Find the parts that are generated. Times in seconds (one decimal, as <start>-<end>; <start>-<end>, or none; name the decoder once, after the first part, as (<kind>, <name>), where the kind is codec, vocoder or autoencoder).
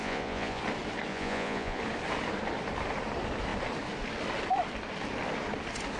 0.0-0.6 (vocoder, Vocos); 1.1-1.8